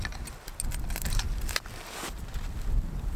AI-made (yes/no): no